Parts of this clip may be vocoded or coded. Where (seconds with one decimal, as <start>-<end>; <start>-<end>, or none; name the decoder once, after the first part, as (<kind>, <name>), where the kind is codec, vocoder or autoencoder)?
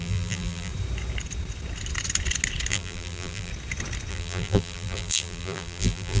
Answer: 0.0-0.7 (vocoder, BigVGAN v2); 2.7-3.5; 4.1-6.2